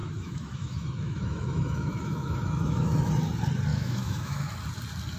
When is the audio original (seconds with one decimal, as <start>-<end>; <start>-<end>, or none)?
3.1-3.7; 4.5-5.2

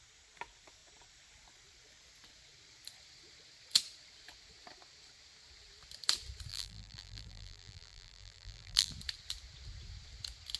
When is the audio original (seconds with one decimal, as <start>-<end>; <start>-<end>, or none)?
0.0-6.5; 8.9-10.6

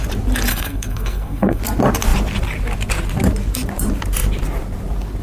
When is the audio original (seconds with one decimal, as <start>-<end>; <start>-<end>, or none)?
0.0-0.5; 1.6-5.2